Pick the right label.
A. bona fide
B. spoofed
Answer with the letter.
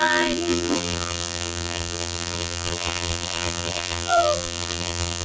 B